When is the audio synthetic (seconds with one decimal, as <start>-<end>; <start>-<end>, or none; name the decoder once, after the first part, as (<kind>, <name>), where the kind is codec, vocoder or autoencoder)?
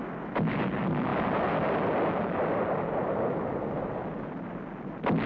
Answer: none